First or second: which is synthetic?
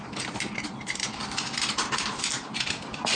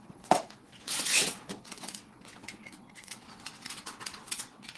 second